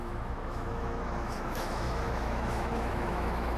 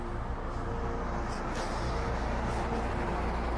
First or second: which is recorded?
second